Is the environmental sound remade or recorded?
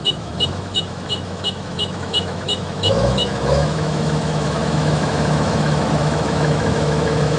remade